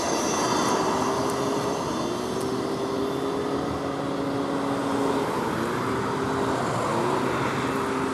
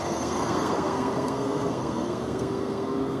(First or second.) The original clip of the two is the first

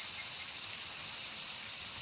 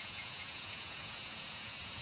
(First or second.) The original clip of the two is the first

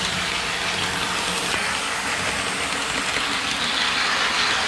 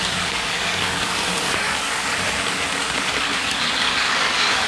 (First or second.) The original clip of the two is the first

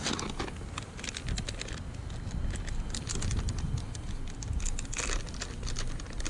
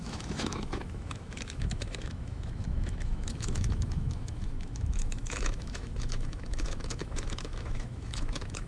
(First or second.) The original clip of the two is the first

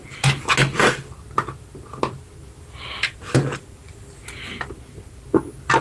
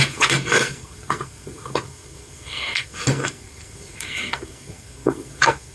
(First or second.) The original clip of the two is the first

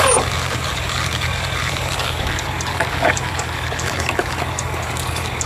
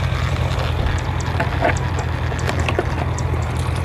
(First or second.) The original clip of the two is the second